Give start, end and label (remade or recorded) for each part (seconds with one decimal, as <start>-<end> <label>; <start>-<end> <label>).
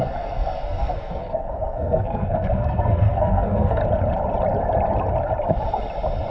0.0-3.8 remade; 3.8-6.3 recorded